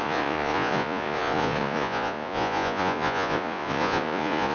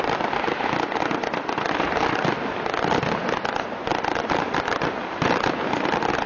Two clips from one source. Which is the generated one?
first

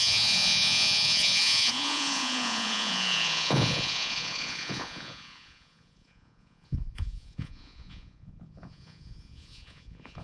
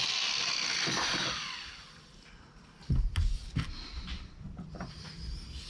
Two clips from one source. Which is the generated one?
first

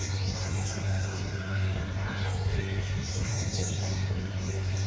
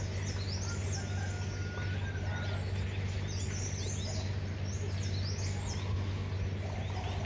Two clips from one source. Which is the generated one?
first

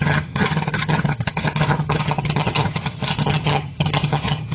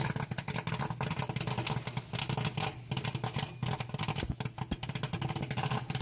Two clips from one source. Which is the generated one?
first